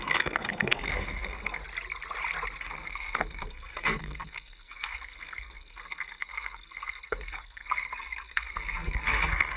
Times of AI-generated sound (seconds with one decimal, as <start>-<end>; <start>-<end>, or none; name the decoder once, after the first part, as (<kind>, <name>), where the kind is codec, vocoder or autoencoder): 0.0-1.6 (codec, SNAC); 2.6-9.6